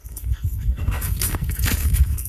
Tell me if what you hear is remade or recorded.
remade